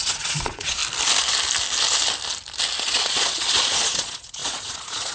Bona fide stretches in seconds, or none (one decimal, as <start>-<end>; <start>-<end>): 0.8-2.8